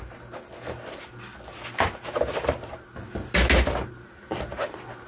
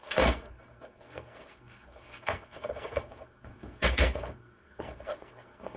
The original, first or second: first